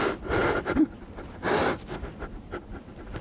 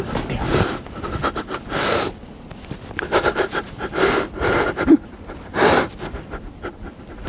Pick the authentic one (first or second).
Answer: first